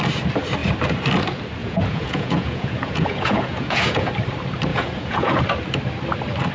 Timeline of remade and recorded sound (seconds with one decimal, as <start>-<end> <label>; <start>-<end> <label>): 0.0-1.6 recorded; 1.6-4.1 remade; 4.1-4.7 recorded; 4.7-5.4 remade; 5.4-6.5 recorded